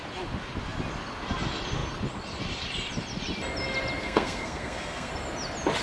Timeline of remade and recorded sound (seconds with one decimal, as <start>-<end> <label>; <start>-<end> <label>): 0.0-4.0 recorded; 4.0-5.1 remade; 5.1-5.8 recorded